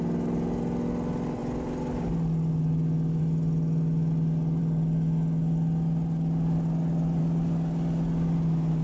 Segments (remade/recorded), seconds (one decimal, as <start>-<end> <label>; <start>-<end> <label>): 0.0-8.8 recorded